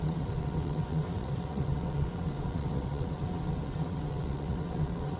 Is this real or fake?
fake